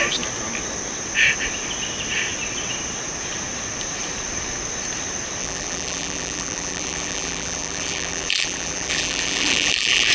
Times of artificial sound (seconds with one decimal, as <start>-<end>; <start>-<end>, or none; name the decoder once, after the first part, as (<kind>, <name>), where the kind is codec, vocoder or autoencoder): 5.4-10.1 (vocoder, BigVGAN v2)